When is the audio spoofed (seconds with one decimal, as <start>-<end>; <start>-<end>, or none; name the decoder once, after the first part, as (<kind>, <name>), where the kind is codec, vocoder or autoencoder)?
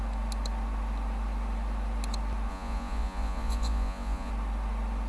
2.5-4.3 (vocoder, Vocos)